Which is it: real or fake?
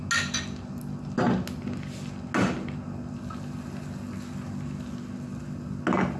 real